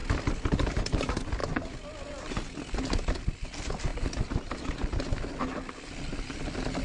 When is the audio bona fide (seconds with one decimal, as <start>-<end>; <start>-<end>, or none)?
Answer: 0.0-6.8